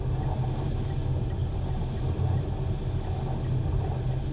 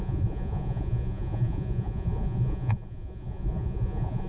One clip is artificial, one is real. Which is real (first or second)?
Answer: first